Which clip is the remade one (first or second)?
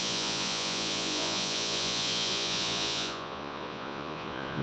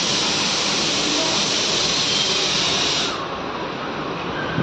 first